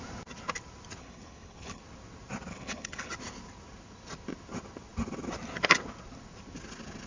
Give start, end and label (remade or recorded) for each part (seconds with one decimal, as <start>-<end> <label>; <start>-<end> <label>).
0.0-1.0 recorded; 1.0-1.8 remade; 1.8-2.5 recorded; 2.5-3.1 remade; 3.1-7.1 recorded